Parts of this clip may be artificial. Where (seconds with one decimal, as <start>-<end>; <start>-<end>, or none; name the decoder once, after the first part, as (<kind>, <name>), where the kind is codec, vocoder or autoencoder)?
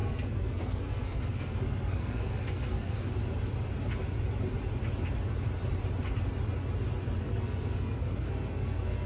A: 0.0-3.1 (codec, SNAC); 7.2-9.1